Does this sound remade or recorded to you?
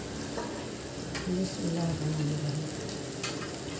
recorded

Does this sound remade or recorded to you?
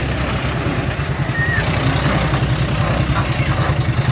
recorded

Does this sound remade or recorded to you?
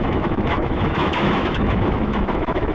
remade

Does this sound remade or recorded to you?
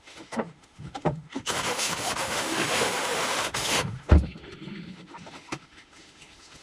remade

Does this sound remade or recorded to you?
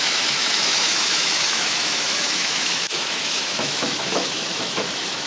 remade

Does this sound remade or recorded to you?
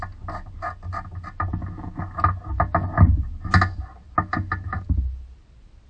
recorded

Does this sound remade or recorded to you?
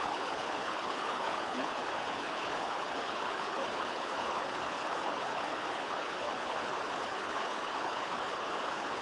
remade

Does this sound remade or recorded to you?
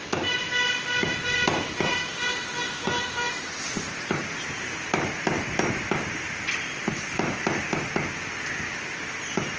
recorded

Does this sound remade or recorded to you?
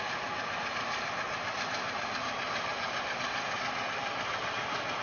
recorded